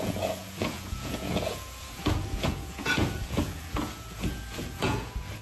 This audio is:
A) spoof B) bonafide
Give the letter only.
A